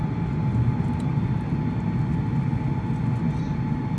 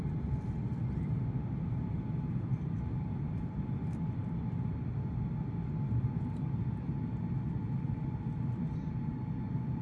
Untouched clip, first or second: first